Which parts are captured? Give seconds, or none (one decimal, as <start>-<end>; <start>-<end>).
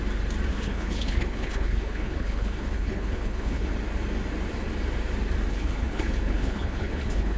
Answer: 0.0-0.5; 3.7-5.5